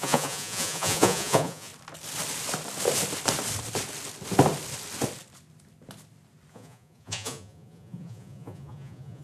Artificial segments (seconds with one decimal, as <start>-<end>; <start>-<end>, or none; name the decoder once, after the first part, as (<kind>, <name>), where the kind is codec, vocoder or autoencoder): 0.0-1.7 (vocoder, Vocos); 6.5-9.2